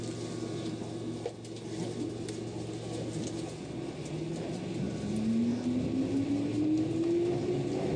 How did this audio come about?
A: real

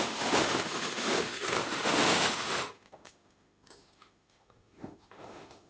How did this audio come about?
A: fake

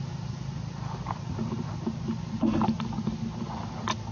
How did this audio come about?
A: real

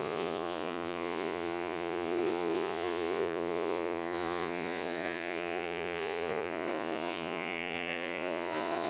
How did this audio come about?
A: fake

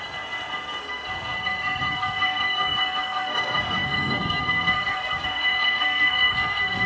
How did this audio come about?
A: fake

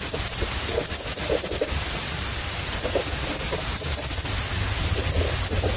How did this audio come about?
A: fake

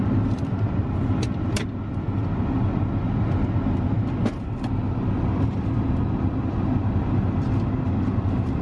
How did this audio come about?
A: real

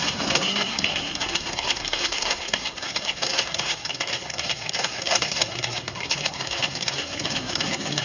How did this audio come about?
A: fake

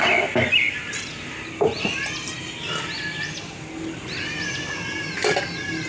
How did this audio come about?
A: real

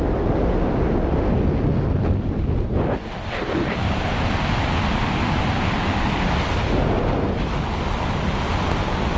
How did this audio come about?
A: real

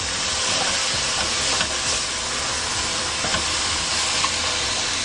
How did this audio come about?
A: real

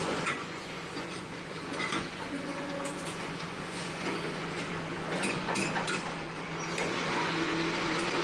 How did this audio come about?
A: fake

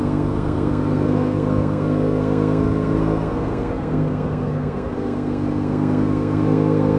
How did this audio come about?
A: fake